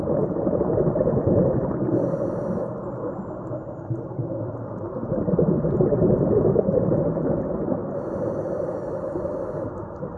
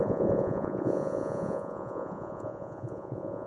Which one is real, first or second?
first